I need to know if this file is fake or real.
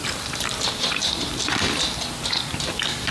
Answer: fake